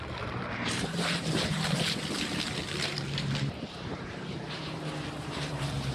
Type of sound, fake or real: fake